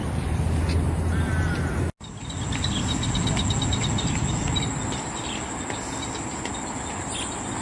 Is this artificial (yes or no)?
no